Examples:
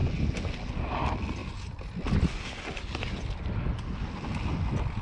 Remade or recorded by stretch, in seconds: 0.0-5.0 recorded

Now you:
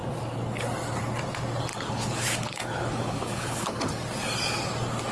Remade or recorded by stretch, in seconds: 0.0-1.7 recorded; 1.7-3.9 remade; 3.9-5.1 recorded

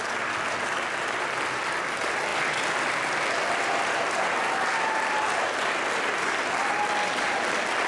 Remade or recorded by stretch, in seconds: 0.0-7.9 recorded

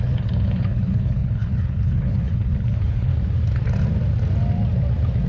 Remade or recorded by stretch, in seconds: 0.0-3.1 remade; 3.1-5.3 recorded

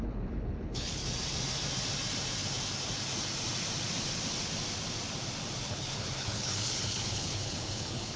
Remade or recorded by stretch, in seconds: 0.0-1.0 remade; 1.0-5.7 recorded; 5.7-8.2 remade